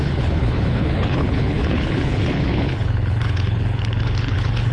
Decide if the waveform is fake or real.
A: fake